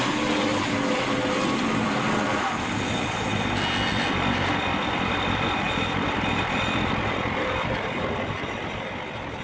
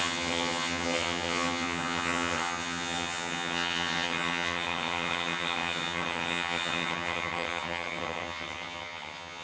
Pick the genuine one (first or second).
first